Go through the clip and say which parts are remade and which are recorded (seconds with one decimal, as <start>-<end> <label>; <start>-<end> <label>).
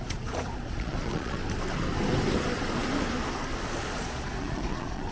0.0-1.4 remade; 1.4-4.0 recorded; 4.0-5.1 remade